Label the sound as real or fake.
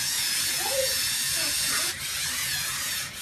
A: fake